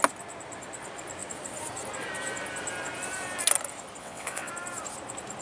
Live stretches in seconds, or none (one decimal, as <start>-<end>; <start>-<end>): 0.0-4.0; 4.5-5.4